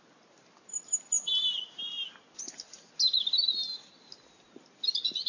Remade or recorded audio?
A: recorded